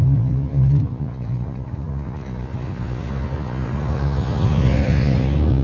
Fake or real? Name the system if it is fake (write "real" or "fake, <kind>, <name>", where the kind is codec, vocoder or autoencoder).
fake, vocoder, Vocos